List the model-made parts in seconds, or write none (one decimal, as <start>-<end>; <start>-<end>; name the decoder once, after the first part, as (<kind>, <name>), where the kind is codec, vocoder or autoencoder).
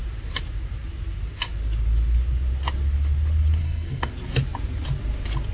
3.6-4.1 (codec, SNAC)